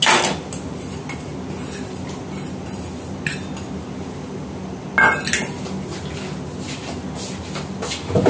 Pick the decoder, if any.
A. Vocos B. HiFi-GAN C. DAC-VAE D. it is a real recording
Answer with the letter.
D